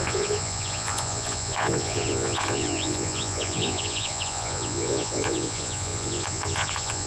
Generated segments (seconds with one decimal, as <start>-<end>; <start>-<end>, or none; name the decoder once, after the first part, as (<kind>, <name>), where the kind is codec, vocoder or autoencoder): 0.0-7.1 (vocoder, Vocos)